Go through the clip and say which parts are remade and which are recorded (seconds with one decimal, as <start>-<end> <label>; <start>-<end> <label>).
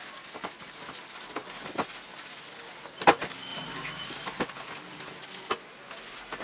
0.0-3.5 recorded; 3.5-4.4 remade; 4.4-6.4 recorded